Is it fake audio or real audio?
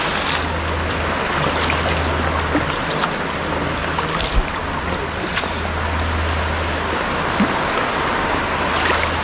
real